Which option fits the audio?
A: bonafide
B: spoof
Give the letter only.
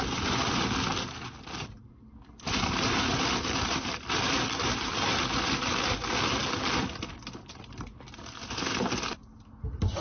A